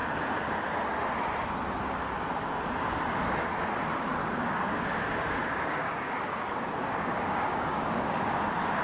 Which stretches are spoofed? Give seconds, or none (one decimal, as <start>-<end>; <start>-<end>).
4.2-8.3